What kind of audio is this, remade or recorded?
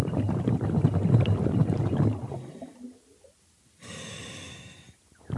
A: recorded